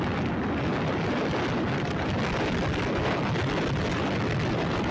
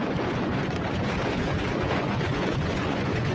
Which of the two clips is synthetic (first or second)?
second